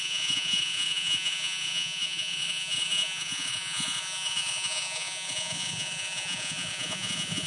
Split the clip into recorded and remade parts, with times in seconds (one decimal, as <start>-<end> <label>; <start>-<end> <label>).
0.0-7.5 remade